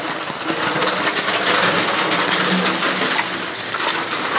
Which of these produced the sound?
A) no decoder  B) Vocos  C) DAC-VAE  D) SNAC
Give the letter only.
A